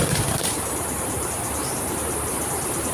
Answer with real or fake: fake